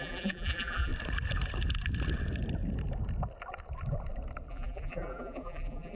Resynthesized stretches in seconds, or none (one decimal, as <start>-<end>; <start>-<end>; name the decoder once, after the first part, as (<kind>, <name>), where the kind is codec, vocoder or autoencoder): 0.0-0.9 (vocoder, BigVGAN v2); 4.5-6.0

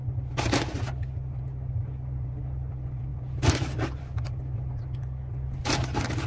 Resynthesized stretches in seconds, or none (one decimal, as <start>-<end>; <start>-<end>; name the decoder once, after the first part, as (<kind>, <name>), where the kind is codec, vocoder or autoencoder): 3.1-4.2 (vocoder, BigVGAN v2)

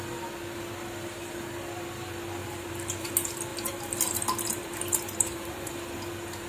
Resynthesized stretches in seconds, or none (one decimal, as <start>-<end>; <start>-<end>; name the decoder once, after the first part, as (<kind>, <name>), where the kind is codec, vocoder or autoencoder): 2.4-3.1 (vocoder, BigVGAN v2); 3.5-5.7

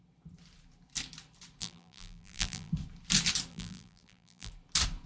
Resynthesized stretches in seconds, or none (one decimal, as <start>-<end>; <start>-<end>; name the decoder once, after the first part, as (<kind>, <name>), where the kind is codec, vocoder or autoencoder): 1.6-2.7 (vocoder, BigVGAN v2); 3.5-4.5

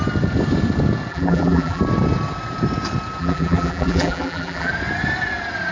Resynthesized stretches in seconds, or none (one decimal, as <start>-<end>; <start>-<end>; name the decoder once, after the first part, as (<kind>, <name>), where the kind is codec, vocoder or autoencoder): 1.1-1.8 (vocoder, BigVGAN v2); 3.2-4.7

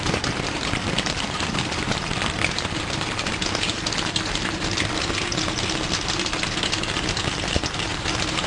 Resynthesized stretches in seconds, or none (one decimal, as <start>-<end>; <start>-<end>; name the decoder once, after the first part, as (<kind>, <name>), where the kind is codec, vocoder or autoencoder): 0.0-3.3 (vocoder, BigVGAN v2); 7.2-8.5